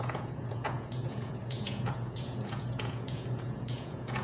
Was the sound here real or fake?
fake